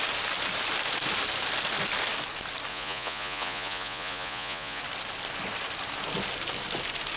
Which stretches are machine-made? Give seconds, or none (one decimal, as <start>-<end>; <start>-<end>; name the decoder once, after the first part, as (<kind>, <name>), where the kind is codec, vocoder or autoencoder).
2.7-4.8 (vocoder, Vocos)